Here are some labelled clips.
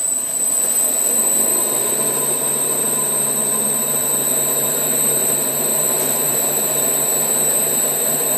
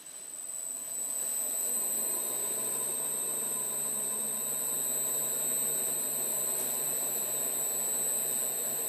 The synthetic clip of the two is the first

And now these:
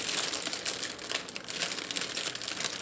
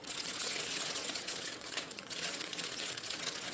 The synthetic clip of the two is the second